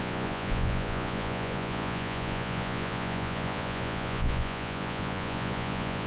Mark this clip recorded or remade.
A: remade